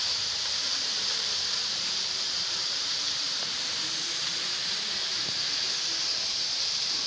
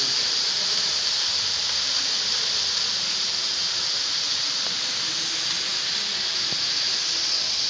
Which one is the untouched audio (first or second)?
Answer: second